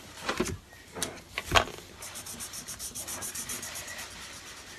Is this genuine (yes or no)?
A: no